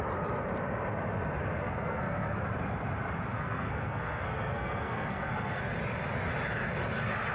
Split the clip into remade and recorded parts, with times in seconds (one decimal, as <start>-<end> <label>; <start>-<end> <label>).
0.0-1.6 recorded; 1.6-2.4 remade; 2.4-3.3 recorded; 3.3-5.6 remade; 5.6-7.3 recorded